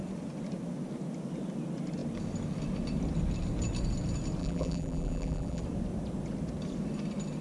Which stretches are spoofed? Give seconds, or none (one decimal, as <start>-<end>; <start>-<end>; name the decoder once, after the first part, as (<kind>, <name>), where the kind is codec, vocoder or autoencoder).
4.4-5.6 (vocoder, BigVGAN v2)